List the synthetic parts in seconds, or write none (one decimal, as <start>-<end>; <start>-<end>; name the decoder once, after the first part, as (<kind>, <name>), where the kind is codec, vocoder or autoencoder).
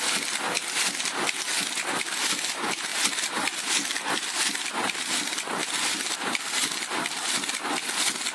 5.6-6.5 (vocoder, BigVGAN v2)